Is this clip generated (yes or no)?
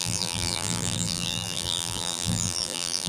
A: yes